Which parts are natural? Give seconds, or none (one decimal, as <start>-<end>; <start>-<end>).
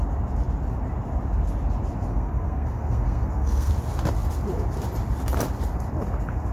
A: 0.0-2.1; 3.7-6.5